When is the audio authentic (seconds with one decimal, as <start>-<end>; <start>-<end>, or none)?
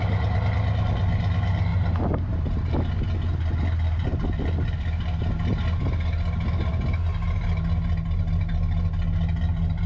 0.0-9.9